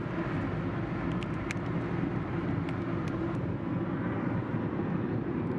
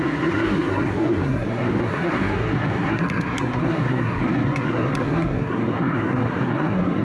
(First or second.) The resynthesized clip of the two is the second